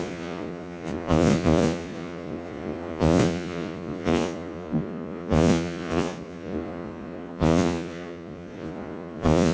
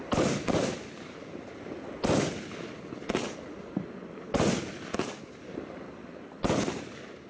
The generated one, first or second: first